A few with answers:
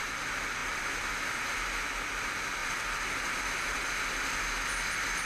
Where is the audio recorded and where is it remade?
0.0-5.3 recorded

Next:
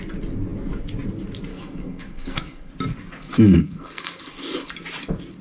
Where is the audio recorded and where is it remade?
0.0-1.5 recorded; 1.5-2.7 remade; 2.7-3.6 recorded; 3.6-4.2 remade; 4.2-5.4 recorded